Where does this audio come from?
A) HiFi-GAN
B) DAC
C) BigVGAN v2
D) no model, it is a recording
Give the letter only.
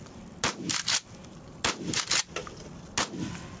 D